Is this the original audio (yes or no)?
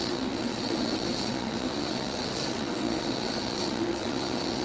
no